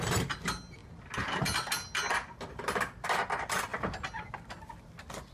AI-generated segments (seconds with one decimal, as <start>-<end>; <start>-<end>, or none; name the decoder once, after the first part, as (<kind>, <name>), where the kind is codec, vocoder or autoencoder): none